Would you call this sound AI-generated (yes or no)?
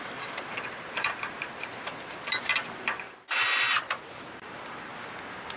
no